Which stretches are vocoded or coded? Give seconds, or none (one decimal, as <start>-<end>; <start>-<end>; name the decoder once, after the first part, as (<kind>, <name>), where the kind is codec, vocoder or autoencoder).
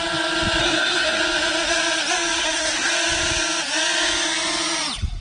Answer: 0.6-1.2 (codec, SNAC); 2.4-2.9